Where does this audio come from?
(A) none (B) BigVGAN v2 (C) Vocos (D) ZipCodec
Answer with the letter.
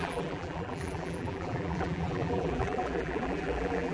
B